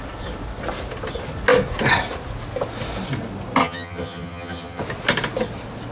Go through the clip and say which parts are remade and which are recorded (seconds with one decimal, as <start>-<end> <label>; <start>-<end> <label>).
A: 0.0-3.6 recorded; 3.6-4.8 remade; 4.8-5.9 recorded